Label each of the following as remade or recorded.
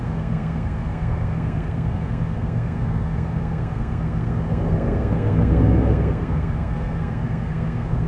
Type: remade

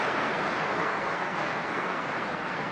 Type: remade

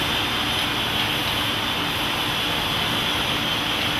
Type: recorded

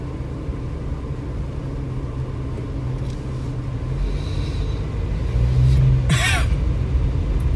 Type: recorded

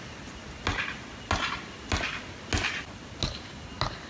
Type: recorded